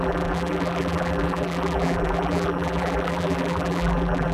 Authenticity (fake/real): fake